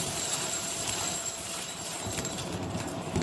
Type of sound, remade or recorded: remade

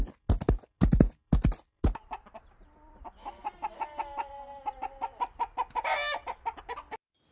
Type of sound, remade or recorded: recorded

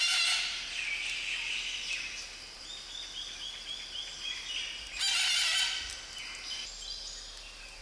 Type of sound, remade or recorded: recorded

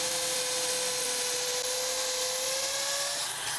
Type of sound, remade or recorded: recorded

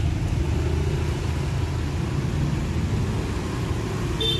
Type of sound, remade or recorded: recorded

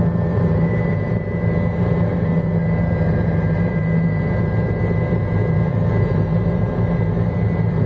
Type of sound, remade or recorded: remade